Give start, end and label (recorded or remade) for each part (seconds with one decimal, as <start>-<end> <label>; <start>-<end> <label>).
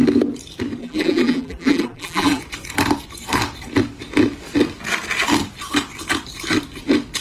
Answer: 0.0-0.8 recorded; 0.8-2.4 remade; 2.4-7.2 recorded